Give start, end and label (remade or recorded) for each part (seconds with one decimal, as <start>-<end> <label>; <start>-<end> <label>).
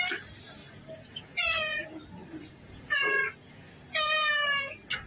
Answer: 0.0-0.6 recorded; 0.6-1.8 remade; 1.8-2.2 recorded; 2.2-3.7 remade; 3.7-5.1 recorded